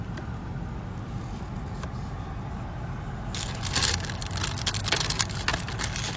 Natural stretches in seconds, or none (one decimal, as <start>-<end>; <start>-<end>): 0.0-6.2